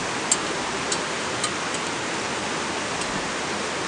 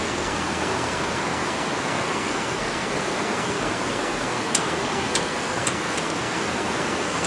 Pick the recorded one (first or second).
first